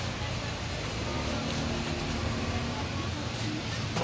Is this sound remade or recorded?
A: recorded